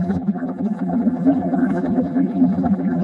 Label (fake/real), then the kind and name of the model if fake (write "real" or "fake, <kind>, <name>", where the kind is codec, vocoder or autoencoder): fake, vocoder, BigVGAN v2